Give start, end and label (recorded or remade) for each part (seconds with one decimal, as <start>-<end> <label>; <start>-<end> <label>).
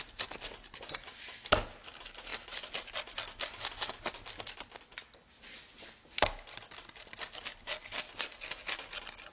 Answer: 0.0-9.3 recorded